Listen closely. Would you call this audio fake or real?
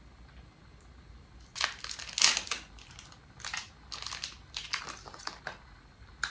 real